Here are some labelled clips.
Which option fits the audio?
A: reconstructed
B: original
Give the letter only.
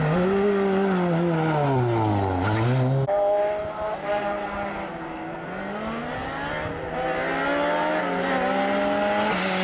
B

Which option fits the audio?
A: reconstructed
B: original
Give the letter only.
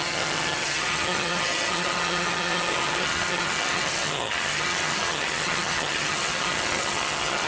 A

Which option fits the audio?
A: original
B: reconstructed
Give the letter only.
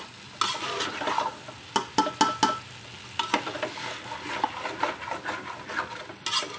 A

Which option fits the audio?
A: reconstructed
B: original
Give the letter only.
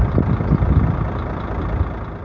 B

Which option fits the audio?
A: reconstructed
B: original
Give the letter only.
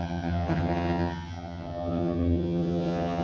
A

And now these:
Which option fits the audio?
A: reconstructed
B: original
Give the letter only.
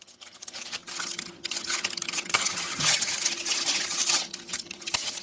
A